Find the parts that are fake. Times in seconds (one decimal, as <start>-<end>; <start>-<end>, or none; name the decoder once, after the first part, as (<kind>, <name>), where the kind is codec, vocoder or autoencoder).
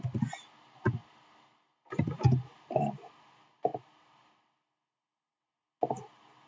none